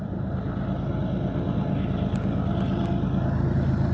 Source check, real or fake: real